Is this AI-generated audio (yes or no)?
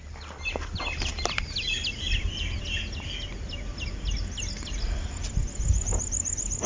no